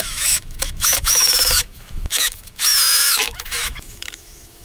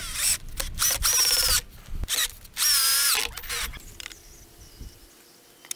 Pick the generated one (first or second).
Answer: first